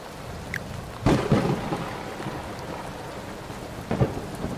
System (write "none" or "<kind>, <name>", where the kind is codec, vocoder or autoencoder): none